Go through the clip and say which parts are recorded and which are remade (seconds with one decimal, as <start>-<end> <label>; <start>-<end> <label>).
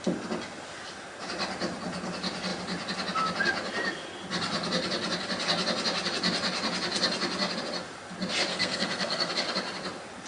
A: 0.0-8.5 recorded; 8.5-9.3 remade; 9.3-10.3 recorded